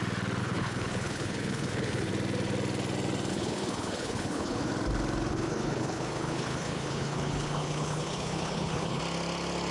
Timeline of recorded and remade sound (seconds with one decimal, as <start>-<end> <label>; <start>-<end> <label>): 0.0-0.4 recorded; 0.4-2.1 remade; 2.1-3.3 recorded; 3.3-4.7 remade; 4.7-5.3 recorded; 5.3-9.0 remade; 9.0-9.7 recorded